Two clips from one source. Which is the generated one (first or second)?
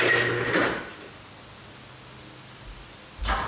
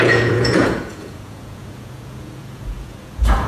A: second